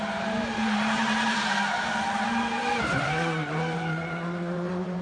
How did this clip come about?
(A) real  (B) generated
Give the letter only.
B